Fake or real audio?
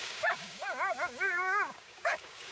fake